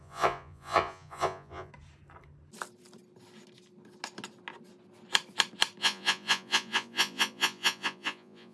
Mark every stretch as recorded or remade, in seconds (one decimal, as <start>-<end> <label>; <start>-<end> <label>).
0.0-1.7 remade; 1.7-5.8 recorded; 5.8-8.5 remade